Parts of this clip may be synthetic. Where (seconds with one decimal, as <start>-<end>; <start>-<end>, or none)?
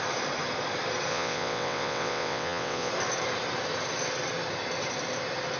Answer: 1.1-2.9